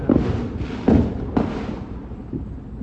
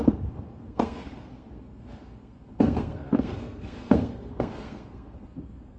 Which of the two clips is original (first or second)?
first